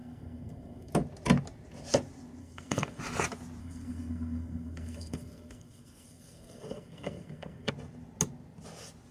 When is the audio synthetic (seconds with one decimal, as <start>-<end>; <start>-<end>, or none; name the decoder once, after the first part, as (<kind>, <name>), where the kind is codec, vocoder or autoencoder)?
0.0-0.9 (codec, SNAC); 2.4-3.0; 3.6-7.7